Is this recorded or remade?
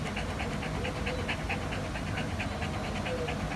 recorded